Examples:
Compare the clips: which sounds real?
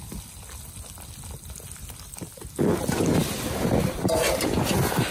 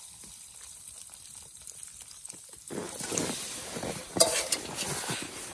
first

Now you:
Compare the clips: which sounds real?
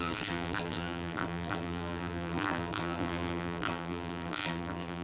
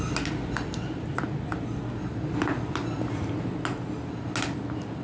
second